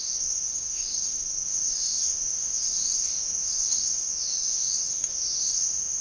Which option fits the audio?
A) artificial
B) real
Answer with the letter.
A